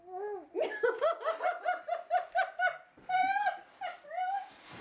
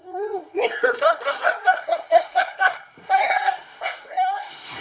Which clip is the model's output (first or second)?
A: second